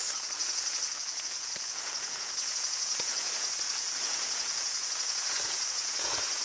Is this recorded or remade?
remade